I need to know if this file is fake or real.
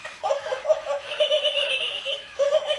fake